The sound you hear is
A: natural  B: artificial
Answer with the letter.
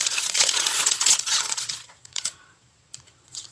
B